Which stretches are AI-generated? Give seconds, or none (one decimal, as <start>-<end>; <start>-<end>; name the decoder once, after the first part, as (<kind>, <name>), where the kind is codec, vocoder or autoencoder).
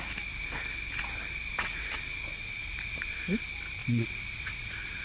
1.4-1.9 (vocoder, Vocos); 2.3-3.0; 3.8-5.0